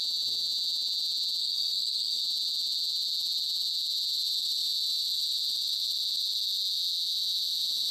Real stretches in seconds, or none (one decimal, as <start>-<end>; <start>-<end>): 0.0-1.4; 2.2-7.9

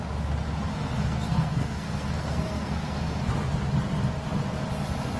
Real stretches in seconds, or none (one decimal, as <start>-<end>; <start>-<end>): 0.0-0.7; 3.3-5.2

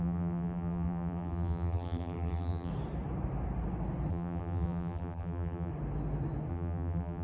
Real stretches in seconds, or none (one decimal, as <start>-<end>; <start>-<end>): 2.7-4.1; 5.7-6.5

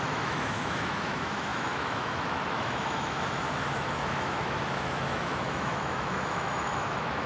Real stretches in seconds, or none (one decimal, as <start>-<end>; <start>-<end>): none

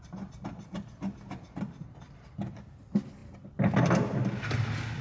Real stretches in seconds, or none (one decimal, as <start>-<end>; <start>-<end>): 0.0-5.0

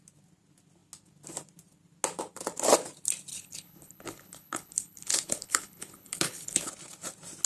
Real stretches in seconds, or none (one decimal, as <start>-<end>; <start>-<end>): 0.0-3.3; 6.7-7.5

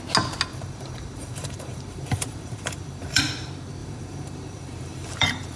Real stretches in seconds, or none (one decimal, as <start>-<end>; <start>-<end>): 0.0-0.5; 3.2-3.8

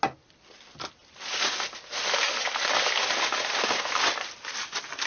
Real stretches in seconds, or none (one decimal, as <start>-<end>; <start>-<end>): 0.0-5.1